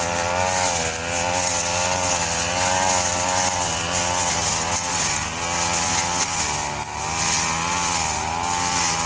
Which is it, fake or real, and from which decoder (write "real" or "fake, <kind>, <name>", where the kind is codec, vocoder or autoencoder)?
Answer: real